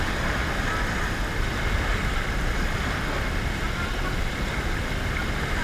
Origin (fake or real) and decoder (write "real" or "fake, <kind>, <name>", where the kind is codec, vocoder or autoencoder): real